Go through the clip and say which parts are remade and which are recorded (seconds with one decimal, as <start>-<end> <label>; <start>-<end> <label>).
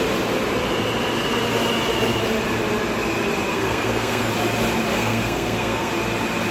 0.0-3.5 recorded; 3.5-4.3 remade; 4.3-4.9 recorded; 4.9-5.9 remade; 5.9-6.5 recorded